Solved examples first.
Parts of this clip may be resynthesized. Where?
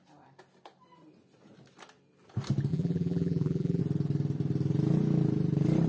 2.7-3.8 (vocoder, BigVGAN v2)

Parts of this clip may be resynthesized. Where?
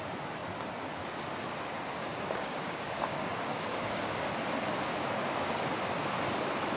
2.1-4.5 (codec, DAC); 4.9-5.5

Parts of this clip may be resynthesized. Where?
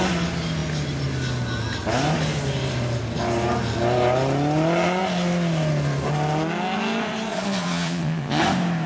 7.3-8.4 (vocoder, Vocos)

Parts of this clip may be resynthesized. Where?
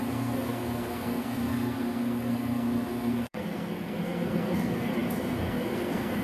0.0-6.2 (codec, SNAC)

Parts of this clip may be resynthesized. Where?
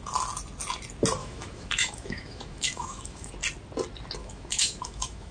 1.2-3.3 (autoencoder, DAC-VAE); 4.2-5.3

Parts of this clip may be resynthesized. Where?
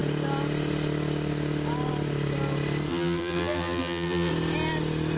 2.9-4.3 (vocoder, BigVGAN v2)